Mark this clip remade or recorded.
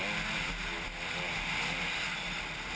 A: recorded